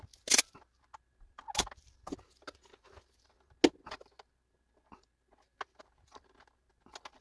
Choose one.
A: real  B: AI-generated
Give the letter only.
A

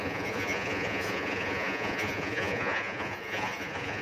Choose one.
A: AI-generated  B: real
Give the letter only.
A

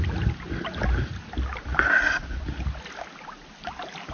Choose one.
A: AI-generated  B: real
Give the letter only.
B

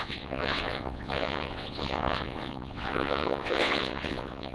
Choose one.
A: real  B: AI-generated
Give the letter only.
B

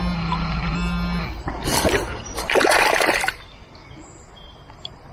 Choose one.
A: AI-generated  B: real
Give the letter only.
B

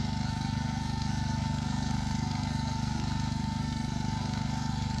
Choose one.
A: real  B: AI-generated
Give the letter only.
B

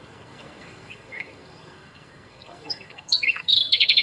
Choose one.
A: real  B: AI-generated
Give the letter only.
B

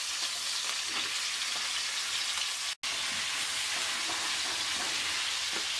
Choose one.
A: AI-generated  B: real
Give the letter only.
B